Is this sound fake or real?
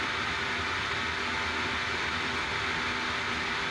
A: real